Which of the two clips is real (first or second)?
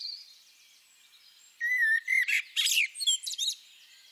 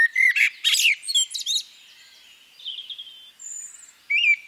second